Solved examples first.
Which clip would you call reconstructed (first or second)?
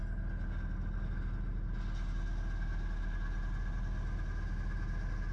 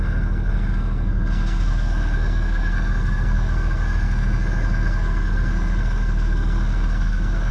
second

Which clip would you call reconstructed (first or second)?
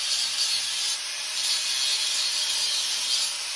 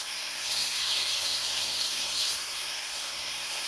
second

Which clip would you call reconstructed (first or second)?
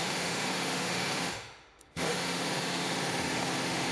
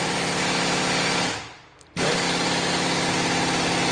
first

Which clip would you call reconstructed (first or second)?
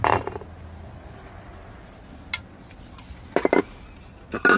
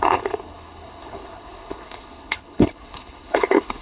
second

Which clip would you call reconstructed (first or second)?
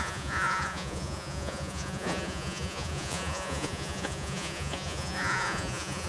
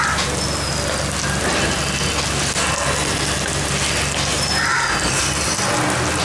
first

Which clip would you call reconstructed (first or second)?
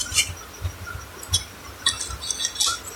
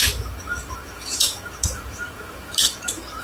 second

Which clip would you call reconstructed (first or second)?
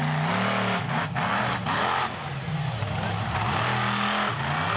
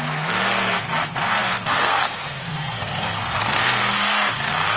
second